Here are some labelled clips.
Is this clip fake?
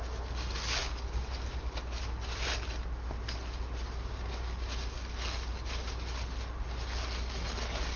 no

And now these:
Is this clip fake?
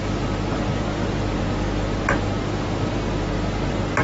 no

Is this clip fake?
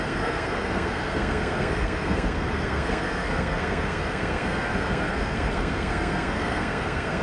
yes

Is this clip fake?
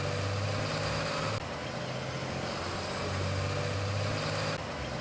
no